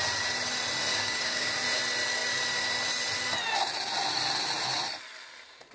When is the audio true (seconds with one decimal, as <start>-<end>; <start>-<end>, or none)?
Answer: 0.0-0.9; 1.5-5.7